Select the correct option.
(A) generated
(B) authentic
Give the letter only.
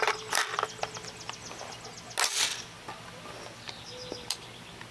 B